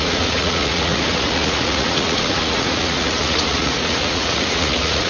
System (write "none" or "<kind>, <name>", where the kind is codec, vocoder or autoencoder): vocoder, Vocos